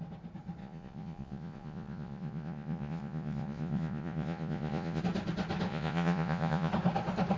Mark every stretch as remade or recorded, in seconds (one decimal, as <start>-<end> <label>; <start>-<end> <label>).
0.0-0.6 recorded; 0.6-5.0 remade; 5.0-5.7 recorded; 5.7-6.7 remade; 6.7-7.4 recorded